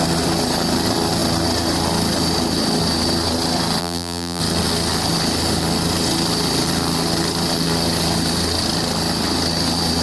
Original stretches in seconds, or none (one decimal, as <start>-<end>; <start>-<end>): 0.0-3.8; 4.4-10.0